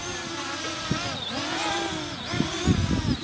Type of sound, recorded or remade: recorded